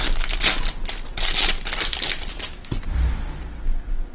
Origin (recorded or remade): recorded